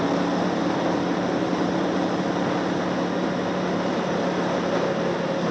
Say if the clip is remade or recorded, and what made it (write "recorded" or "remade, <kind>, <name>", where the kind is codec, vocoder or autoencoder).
recorded